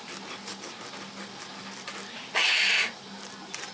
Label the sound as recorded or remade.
recorded